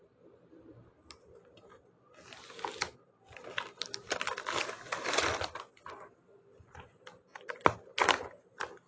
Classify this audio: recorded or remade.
recorded